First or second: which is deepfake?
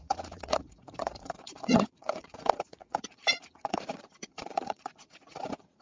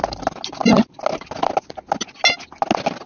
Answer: first